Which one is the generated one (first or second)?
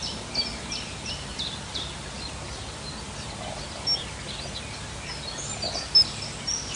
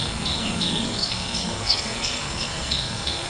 second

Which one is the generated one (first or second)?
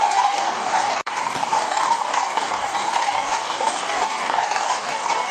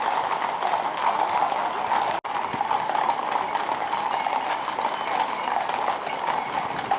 first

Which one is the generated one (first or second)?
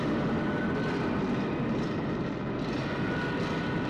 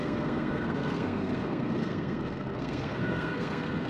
second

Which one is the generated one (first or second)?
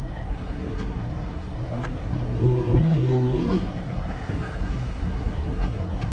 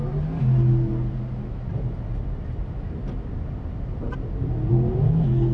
first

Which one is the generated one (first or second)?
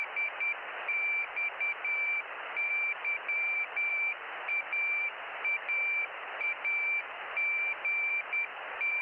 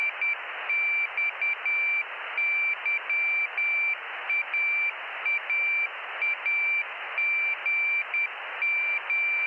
first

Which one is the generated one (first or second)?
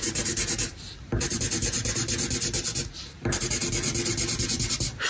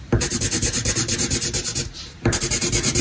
second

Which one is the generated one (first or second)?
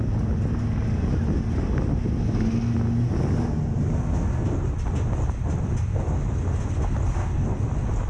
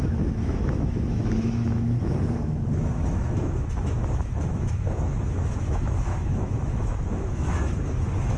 second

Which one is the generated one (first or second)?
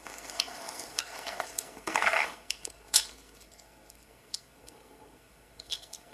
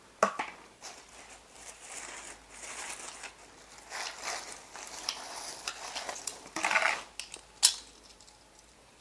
first